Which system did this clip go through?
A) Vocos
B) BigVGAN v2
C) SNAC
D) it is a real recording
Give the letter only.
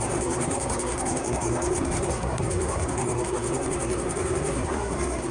C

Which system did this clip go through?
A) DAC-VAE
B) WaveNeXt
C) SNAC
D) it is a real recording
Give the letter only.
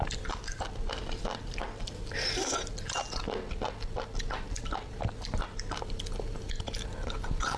D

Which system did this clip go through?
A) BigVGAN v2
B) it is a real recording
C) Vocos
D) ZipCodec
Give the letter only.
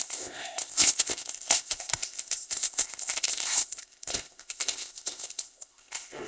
D